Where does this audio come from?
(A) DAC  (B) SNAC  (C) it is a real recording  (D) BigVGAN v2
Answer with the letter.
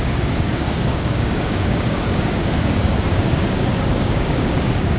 A